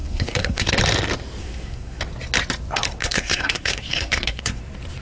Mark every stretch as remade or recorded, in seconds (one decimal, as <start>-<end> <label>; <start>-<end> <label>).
0.0-0.7 remade; 0.7-1.4 recorded; 1.4-2.0 remade; 2.0-3.0 recorded; 3.0-4.6 remade; 4.6-5.0 recorded